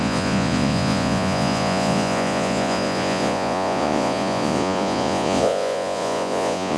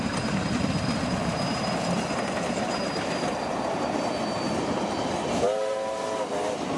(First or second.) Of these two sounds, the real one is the second